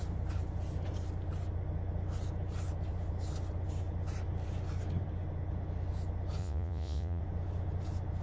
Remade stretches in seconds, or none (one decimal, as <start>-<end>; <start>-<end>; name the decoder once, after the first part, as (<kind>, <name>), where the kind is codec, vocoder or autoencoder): 6.4-7.2 (vocoder, Vocos)